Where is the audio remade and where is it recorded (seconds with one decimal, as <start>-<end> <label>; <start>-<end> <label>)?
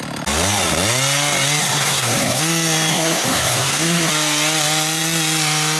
0.0-1.6 recorded; 1.6-2.4 remade; 2.4-2.9 recorded; 2.9-4.1 remade; 4.1-5.8 recorded